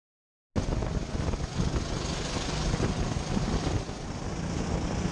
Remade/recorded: recorded